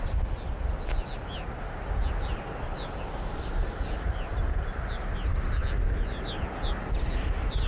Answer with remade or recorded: recorded